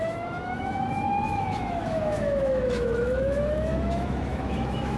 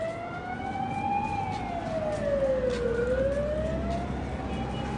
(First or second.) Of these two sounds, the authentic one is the second